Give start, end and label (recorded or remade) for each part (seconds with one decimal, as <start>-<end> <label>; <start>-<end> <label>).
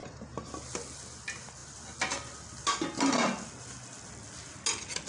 0.0-5.1 recorded